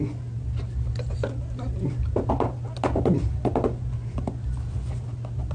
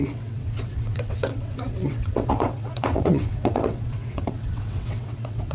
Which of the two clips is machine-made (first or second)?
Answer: second